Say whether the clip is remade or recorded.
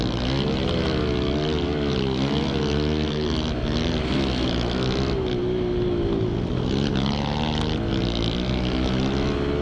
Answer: recorded